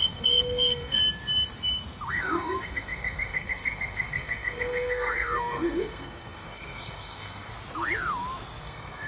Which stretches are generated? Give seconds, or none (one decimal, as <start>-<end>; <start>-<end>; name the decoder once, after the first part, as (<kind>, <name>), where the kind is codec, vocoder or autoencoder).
0.0-1.0 (codec, SNAC); 2.1-7.5; 8.6-9.1